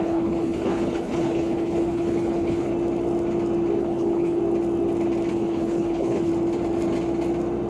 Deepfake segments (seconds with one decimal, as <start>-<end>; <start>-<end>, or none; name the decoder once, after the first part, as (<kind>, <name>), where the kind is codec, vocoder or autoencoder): 0.0-2.7 (codec, HILCodec); 3.8-4.4; 5.3-6.3